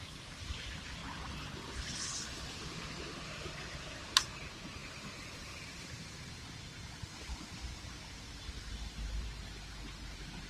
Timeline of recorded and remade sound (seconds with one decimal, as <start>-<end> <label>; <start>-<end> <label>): 0.0-1.0 remade; 1.0-3.1 recorded; 3.1-10.5 remade